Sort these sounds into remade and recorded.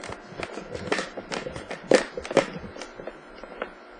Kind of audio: recorded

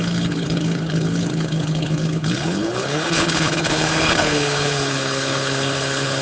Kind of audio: remade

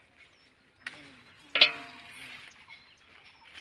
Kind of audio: recorded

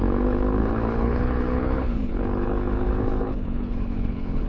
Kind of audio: remade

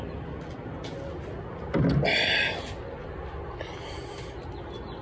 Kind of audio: recorded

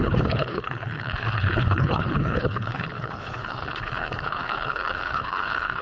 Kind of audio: remade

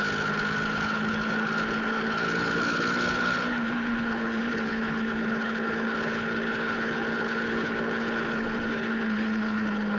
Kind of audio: remade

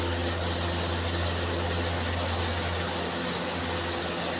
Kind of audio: recorded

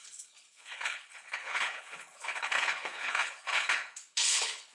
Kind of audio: remade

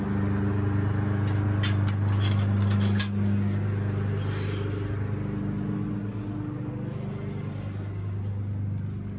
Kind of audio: recorded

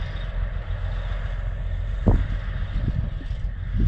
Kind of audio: recorded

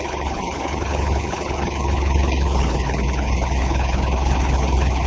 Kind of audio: remade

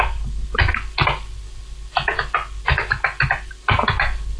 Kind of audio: recorded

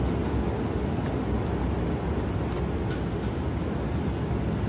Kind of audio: recorded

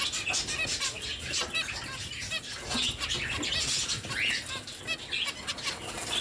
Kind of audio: recorded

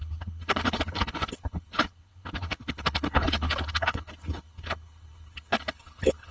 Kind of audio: remade